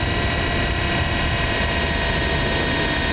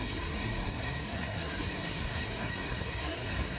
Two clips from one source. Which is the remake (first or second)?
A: second